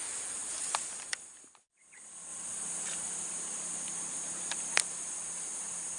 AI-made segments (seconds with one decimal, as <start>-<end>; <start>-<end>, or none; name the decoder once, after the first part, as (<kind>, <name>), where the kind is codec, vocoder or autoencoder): 0.4-1.5 (vocoder, BigVGAN v2); 2.3-4.8